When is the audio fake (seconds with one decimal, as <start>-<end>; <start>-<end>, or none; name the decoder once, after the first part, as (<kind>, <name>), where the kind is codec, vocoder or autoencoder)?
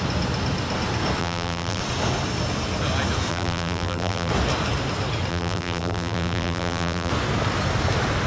1.2-1.8 (vocoder, BigVGAN v2); 3.3-4.3; 5.3-7.1